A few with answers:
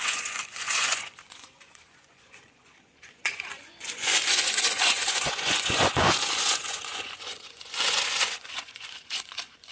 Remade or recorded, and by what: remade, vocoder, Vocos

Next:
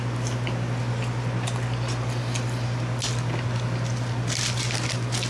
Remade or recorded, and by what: recorded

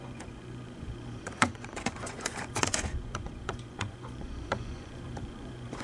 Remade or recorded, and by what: remade, vocoder, Vocos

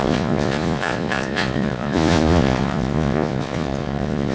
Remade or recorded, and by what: remade, vocoder, Vocos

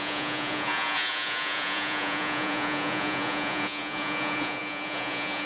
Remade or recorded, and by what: remade, vocoder, Vocos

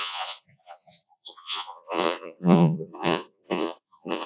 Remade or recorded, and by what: remade, vocoder, Vocos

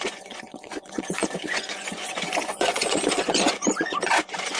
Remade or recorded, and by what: remade, vocoder, Vocos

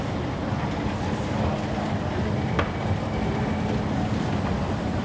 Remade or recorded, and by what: recorded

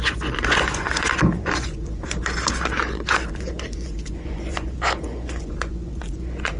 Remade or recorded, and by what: remade, vocoder, Vocos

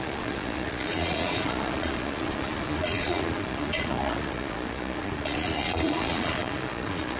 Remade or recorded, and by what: remade, vocoder, Vocos